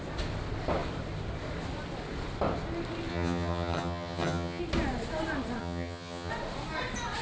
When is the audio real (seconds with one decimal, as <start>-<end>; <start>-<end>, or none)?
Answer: 0.0-3.1; 4.6-5.6; 6.3-7.2